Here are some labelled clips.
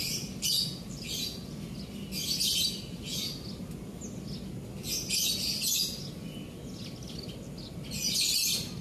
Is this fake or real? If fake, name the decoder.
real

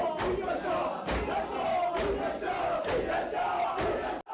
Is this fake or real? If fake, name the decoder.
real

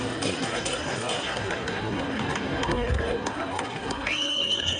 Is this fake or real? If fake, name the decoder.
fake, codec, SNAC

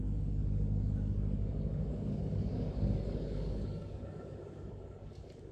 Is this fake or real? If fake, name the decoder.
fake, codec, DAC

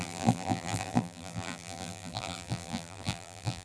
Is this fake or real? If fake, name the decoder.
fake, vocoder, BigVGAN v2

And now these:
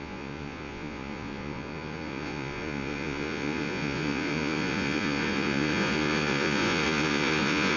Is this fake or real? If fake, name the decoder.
fake, vocoder, Vocos